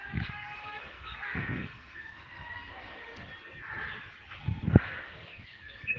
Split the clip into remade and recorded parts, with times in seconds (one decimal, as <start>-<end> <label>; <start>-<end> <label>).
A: 0.0-3.3 remade; 3.3-4.4 recorded; 4.4-6.0 remade